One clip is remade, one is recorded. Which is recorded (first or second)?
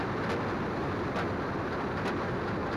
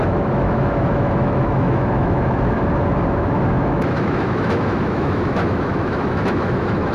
first